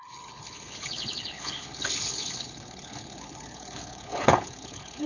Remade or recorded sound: remade